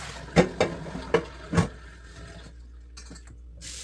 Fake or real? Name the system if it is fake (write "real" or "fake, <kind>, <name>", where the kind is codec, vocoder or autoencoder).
real